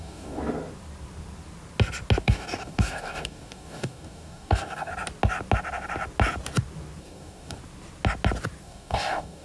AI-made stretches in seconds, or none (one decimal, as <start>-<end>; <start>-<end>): 0.0-0.4; 2.2-4.9; 7.0-7.6; 8.6-9.4